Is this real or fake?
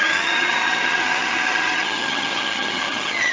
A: fake